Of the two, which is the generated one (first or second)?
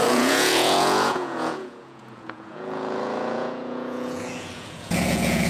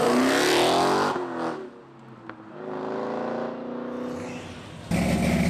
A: first